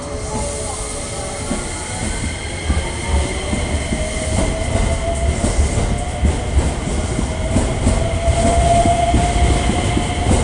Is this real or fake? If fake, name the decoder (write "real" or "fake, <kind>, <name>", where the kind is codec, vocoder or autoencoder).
real